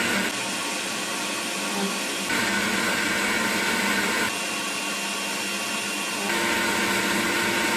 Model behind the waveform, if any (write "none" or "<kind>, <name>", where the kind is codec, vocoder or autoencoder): none